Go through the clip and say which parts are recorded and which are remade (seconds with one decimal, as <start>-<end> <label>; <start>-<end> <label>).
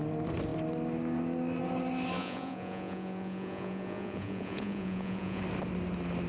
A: 0.0-2.2 recorded; 2.2-5.4 remade; 5.4-6.3 recorded